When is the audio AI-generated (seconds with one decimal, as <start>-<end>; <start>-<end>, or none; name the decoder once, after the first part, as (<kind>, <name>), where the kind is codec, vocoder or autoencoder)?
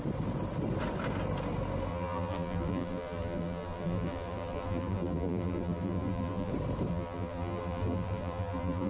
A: 1.9-6.5 (vocoder, BigVGAN v2); 6.9-8.9